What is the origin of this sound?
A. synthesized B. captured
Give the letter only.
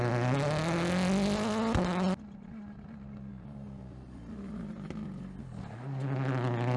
B